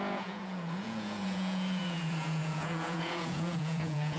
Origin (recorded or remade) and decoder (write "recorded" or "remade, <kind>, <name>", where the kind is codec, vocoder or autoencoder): remade, vocoder, Vocos